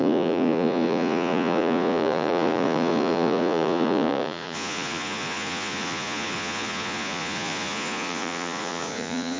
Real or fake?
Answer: fake